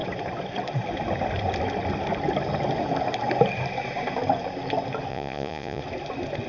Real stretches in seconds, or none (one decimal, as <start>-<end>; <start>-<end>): 0.0-5.1; 5.8-6.5